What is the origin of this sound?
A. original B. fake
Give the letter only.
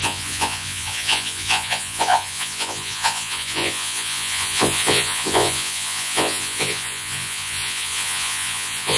B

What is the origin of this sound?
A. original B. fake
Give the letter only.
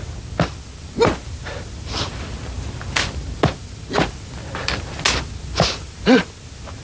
A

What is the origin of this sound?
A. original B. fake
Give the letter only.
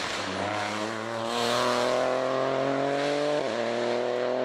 A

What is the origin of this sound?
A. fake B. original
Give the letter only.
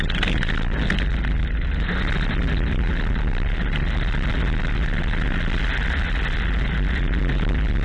B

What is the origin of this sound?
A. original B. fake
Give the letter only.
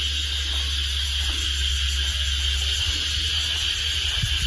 A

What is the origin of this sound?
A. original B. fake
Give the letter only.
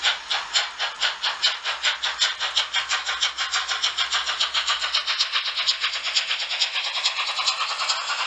A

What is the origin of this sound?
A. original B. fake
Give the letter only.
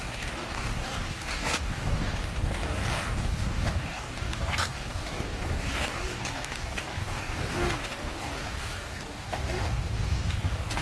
B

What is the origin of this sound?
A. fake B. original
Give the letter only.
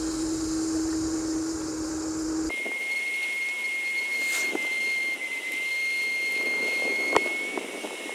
B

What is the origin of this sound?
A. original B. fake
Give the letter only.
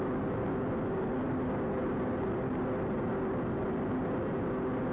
A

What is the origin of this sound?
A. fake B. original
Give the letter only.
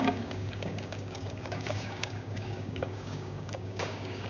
A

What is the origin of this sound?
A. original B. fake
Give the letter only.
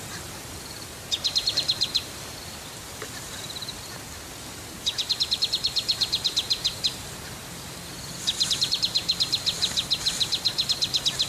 B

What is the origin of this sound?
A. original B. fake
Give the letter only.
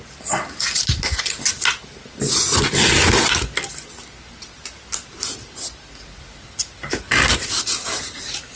A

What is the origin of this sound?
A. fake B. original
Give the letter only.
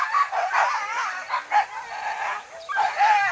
B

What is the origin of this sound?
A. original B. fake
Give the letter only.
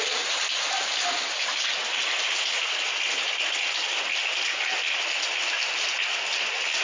A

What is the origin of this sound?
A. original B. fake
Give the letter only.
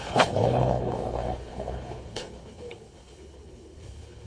B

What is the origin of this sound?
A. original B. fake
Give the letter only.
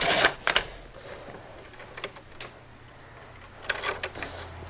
A